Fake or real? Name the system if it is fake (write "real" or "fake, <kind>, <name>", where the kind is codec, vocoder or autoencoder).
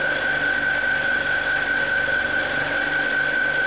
real